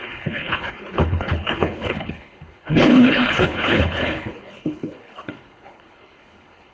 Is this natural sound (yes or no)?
no